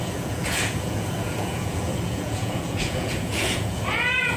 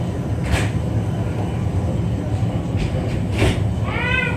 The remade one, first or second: first